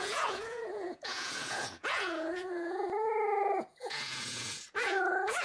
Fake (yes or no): yes